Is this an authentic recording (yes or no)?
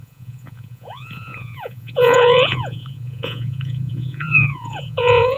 no